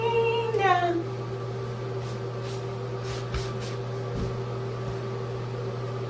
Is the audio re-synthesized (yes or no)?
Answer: yes